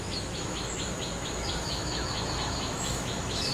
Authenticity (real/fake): fake